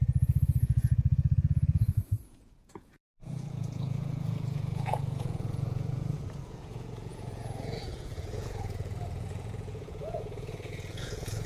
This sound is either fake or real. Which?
fake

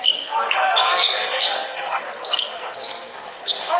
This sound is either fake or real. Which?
fake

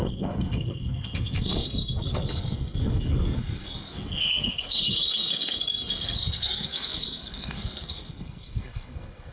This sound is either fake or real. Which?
fake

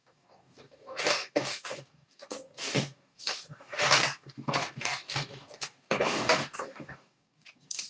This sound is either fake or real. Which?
fake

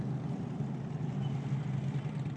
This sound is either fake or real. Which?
real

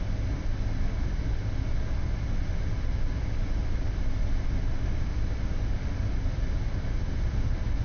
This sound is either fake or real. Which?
real